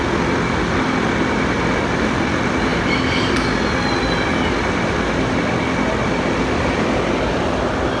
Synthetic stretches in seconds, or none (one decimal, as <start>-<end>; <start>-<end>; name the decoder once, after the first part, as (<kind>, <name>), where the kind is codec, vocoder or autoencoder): none